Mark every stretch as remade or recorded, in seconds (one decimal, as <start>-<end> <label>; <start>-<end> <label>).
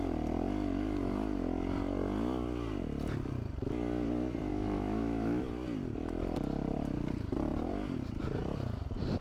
0.0-4.5 recorded; 4.5-5.4 remade; 5.4-9.2 recorded